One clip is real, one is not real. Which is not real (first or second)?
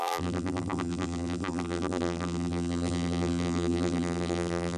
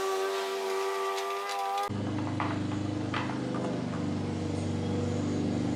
first